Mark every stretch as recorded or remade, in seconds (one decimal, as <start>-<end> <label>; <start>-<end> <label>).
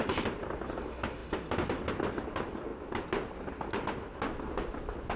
0.0-5.2 recorded